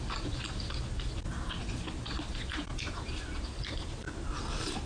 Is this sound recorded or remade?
recorded